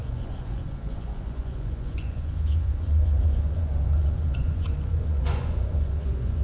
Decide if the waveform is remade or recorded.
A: remade